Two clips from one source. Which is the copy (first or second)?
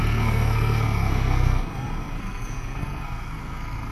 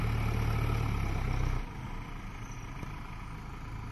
first